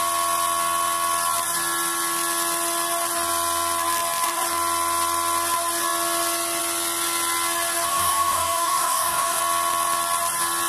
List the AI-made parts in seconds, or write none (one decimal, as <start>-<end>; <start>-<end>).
7.9-9.4